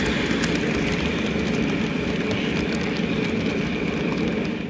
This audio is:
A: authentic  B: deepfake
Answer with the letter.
B